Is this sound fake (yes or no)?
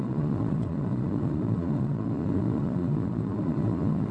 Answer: yes